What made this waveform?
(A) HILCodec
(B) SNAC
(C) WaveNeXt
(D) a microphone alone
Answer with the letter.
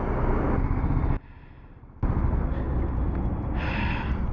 D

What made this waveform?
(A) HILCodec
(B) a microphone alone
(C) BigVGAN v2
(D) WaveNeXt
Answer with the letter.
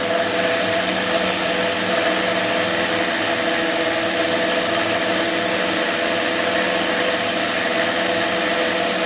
B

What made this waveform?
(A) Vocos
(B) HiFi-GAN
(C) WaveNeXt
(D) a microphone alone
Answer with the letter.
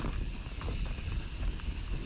D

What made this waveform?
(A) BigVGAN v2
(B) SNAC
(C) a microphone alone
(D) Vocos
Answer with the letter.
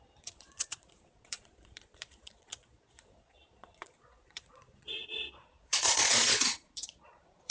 D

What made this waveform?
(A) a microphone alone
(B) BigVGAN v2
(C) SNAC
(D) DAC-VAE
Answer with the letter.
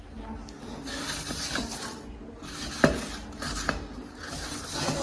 A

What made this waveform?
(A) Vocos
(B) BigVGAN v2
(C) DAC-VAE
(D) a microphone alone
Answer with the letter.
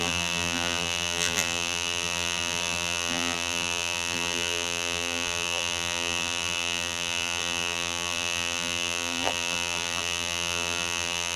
B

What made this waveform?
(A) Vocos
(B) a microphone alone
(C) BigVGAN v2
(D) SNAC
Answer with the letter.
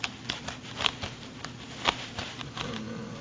B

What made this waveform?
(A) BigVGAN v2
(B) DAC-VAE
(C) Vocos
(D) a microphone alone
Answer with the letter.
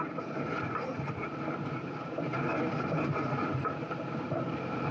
A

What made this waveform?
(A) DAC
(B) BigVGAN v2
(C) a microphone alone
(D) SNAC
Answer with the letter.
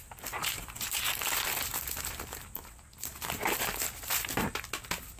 C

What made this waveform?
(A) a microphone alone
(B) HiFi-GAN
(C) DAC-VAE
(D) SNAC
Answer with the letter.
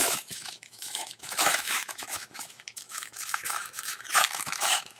C